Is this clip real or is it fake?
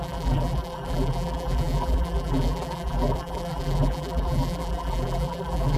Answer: fake